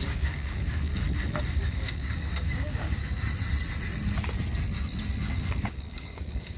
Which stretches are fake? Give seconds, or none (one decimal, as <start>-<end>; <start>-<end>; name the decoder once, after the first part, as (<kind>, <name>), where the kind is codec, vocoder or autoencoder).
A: 0.0-0.9 (codec, DAC); 1.5-3.0; 5.6-6.6